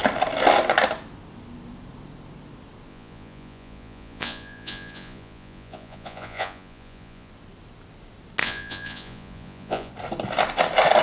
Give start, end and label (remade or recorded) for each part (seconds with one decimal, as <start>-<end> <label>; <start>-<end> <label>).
0.0-2.9 recorded; 2.9-7.3 remade; 7.3-8.4 recorded; 8.4-9.9 remade; 9.9-11.0 recorded